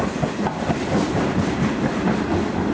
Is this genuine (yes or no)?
yes